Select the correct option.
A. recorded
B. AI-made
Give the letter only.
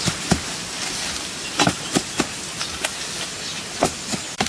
A